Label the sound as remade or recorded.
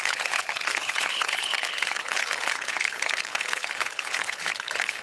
remade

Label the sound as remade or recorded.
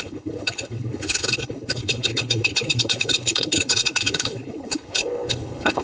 remade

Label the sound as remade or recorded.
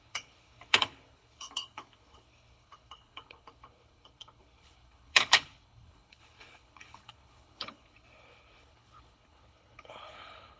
remade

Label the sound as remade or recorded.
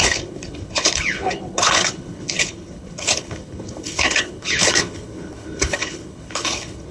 remade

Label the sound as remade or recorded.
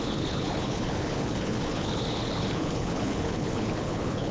remade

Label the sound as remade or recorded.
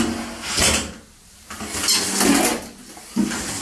recorded